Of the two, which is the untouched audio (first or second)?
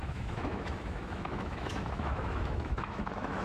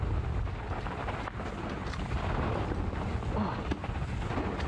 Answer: second